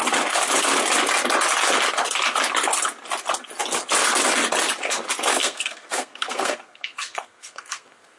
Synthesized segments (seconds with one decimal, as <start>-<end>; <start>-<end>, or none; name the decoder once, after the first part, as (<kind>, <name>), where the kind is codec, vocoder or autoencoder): 5.4-8.2 (codec, SNAC)